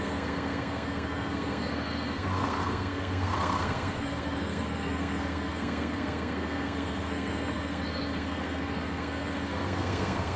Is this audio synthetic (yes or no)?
yes